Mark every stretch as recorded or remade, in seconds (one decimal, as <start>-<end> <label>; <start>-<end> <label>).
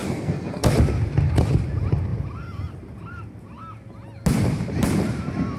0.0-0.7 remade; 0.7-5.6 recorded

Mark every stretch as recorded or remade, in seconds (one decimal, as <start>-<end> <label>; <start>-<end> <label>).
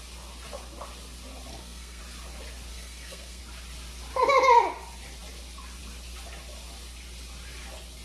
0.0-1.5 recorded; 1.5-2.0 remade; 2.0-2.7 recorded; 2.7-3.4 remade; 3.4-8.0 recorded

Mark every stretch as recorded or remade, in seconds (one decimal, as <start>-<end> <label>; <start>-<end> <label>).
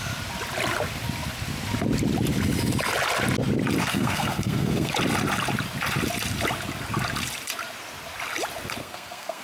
0.0-3.8 recorded; 3.8-4.9 remade; 4.9-8.8 recorded; 8.8-9.4 remade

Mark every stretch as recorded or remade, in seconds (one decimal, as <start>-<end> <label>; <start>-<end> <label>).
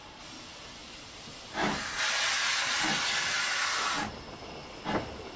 0.0-0.8 recorded; 0.8-2.4 remade; 2.4-5.4 recorded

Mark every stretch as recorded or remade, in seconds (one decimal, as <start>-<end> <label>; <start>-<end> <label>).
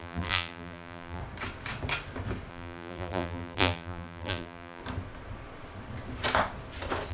0.0-1.2 remade; 1.2-2.5 recorded; 2.5-4.8 remade; 4.8-7.1 recorded